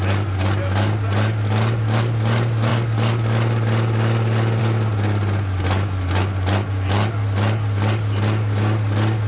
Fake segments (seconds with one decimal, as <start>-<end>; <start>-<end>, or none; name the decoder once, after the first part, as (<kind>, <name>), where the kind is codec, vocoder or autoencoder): none